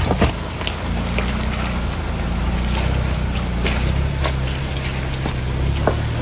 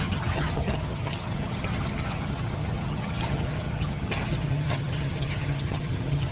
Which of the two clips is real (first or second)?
first